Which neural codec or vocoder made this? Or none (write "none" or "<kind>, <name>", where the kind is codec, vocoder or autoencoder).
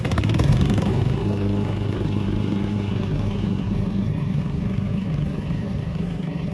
codec, SNAC